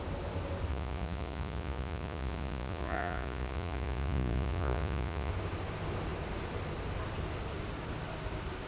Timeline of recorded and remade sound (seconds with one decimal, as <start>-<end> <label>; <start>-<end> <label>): 0.0-0.7 recorded; 0.7-5.3 remade; 5.3-8.7 recorded